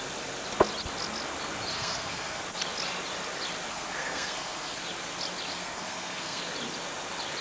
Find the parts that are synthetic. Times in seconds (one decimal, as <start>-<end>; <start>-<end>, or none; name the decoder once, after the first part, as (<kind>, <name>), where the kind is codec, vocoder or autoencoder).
1.7-2.4 (codec, SNAC); 3.7-4.8; 5.5-6.4